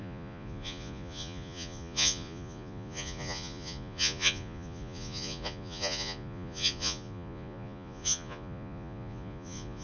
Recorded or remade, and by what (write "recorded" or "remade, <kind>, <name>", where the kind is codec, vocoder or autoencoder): remade, vocoder, Vocos